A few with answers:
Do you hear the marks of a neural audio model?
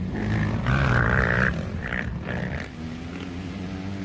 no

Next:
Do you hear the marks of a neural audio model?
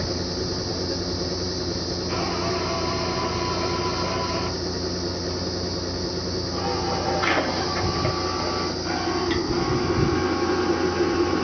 no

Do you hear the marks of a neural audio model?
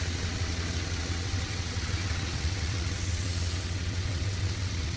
yes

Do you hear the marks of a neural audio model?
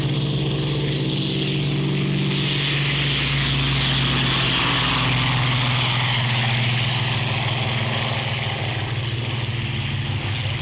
no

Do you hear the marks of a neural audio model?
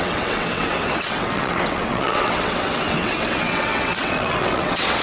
yes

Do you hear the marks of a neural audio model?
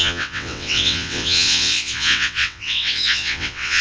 yes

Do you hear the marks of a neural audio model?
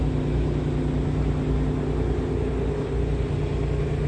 no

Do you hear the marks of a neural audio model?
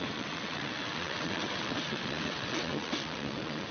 yes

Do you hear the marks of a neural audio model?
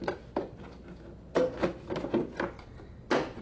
no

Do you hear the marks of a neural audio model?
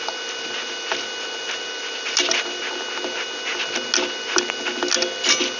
no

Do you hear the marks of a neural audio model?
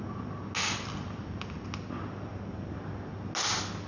no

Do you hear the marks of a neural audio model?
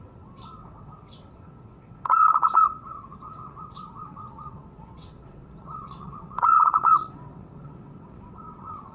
yes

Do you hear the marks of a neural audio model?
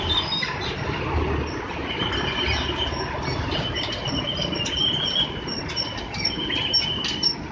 no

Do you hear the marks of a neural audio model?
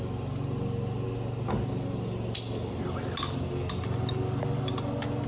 no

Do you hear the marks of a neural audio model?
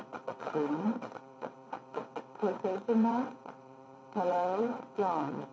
yes